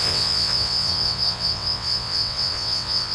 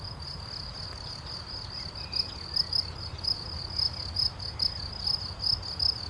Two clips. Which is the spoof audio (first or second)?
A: first